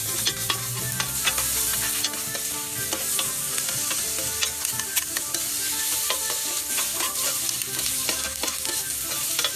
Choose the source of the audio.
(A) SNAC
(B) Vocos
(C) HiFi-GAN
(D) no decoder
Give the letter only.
D